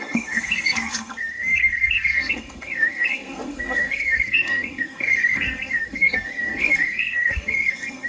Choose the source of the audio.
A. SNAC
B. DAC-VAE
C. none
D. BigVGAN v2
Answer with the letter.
A